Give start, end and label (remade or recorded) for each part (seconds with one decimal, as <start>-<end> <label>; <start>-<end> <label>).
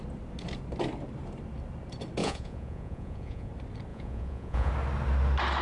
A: 0.0-2.2 recorded; 2.2-3.5 remade; 3.5-3.9 recorded; 3.9-4.7 remade; 4.7-5.6 recorded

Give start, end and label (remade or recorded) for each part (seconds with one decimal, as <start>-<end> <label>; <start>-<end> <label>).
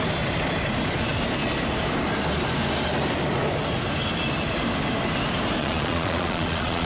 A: 0.0-5.6 recorded; 5.6-6.9 remade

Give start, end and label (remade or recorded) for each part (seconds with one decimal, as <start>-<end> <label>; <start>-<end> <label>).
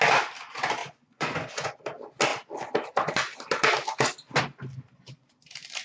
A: 0.0-0.8 recorded; 0.8-1.7 remade; 1.7-5.8 recorded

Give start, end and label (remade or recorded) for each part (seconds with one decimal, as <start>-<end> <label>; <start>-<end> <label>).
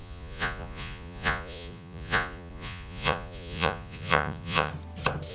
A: 0.0-4.7 remade; 4.7-5.3 recorded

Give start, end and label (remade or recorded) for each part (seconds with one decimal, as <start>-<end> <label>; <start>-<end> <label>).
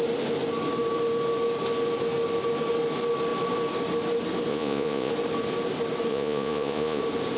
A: 0.0-4.5 recorded; 4.5-5.1 remade; 5.1-6.1 recorded; 6.1-7.0 remade; 7.0-7.4 recorded